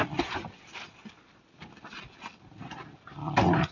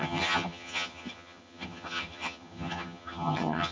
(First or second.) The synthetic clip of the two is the second